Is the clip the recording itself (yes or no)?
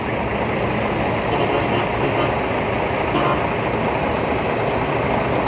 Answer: yes